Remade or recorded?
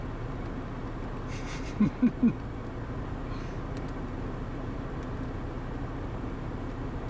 recorded